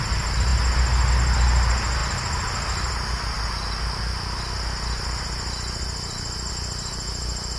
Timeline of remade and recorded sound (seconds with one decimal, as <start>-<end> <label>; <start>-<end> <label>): 0.0-7.6 recorded